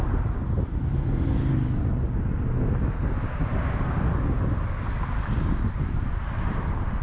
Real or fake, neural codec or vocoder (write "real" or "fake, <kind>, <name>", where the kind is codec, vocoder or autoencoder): real